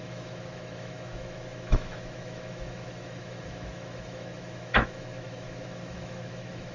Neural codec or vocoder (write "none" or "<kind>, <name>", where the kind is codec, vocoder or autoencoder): autoencoder, DAC-VAE